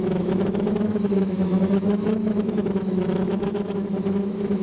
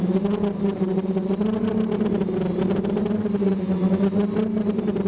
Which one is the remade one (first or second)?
first